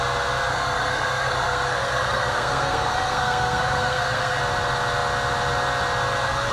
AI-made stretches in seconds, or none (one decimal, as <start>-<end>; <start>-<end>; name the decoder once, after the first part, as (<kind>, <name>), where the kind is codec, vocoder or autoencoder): 0.5-4.4 (codec, SNAC)